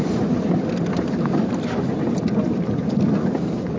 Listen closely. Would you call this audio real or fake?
real